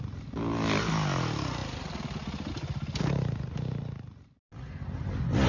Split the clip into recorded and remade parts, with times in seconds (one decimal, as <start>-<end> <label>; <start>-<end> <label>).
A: 0.0-5.5 recorded